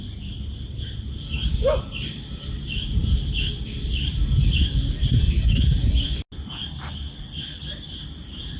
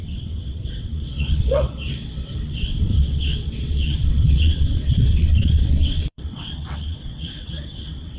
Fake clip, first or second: second